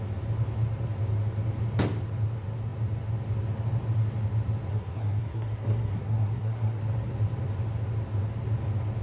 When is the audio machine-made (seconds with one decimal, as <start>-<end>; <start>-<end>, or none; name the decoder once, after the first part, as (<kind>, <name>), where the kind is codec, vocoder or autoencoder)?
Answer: 4.7-6.8 (codec, SNAC)

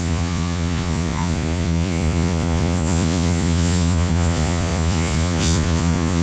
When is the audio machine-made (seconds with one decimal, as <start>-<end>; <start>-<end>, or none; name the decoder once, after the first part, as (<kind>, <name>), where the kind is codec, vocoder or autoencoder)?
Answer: 0.0-6.2 (vocoder, Vocos)

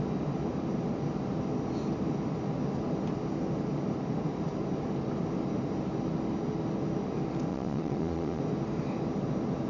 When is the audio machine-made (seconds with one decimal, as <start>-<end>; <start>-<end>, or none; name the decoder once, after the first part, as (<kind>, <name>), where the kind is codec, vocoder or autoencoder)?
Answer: 7.5-8.4 (vocoder, Vocos)

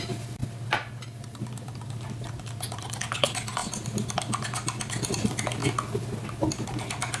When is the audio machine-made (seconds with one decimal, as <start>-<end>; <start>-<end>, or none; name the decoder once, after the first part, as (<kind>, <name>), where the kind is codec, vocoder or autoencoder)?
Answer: 0.0-3.6 (vocoder, BigVGAN v2); 5.1-5.6; 6.3-7.2

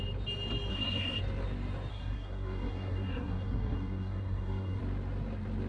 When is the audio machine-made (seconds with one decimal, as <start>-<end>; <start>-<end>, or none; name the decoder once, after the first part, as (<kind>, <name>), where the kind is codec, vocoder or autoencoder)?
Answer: 0.7-1.2 (codec, SNAC); 1.9-4.8

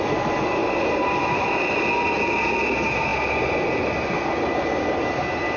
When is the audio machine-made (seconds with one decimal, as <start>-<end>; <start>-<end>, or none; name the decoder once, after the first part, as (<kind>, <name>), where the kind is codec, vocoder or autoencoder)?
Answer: 0.6-1.6 (vocoder, BigVGAN v2)